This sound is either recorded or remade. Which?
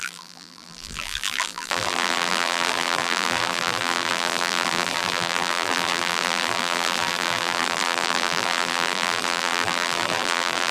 remade